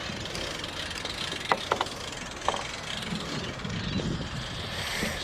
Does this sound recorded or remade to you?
recorded